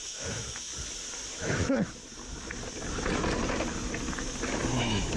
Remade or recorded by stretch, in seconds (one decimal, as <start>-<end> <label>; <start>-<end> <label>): 0.0-0.7 remade; 0.7-1.3 recorded; 1.3-2.0 remade; 2.0-4.8 recorded; 4.8-5.2 remade